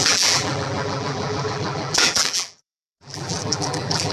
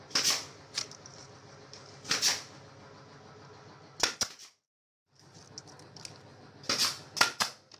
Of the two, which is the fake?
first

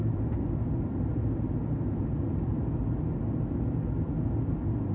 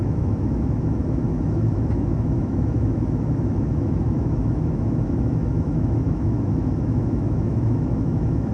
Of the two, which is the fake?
second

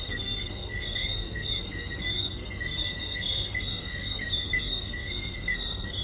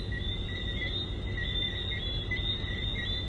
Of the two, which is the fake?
first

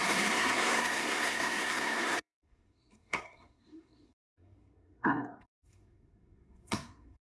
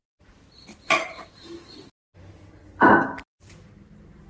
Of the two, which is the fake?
first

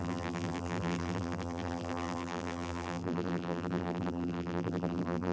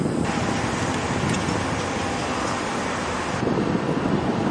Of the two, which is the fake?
first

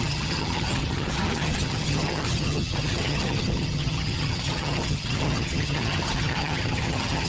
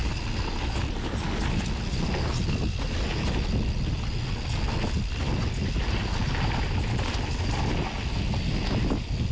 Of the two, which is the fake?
first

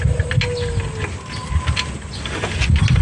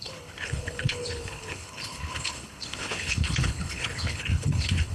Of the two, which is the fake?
second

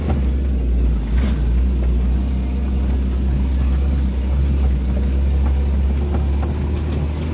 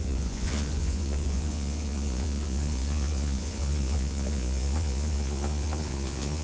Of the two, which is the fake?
second